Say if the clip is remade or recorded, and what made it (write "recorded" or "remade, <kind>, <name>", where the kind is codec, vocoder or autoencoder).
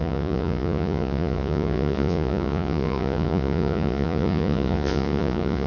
remade, vocoder, Vocos